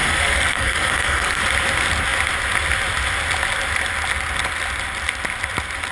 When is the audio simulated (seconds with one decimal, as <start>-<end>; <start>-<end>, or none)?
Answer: 0.0-1.4